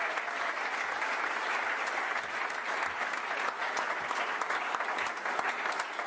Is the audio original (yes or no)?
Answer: yes